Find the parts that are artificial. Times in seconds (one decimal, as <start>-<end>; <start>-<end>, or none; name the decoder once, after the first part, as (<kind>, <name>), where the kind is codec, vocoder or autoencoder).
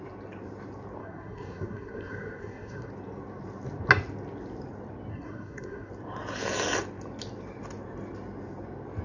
1.0-2.9 (codec, SNAC); 5.1-5.9